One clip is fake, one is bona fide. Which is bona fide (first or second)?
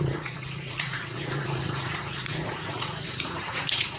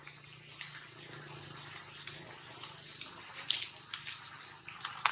second